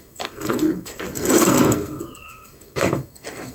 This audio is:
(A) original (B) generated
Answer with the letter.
B